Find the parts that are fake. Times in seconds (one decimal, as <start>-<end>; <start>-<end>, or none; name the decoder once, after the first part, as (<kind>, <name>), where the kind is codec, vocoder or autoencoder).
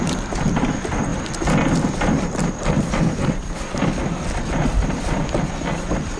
none